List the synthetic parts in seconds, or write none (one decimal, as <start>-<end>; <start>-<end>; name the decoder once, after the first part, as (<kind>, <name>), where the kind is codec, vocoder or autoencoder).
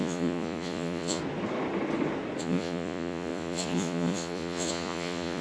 0.0-1.2 (vocoder, Vocos); 2.4-5.4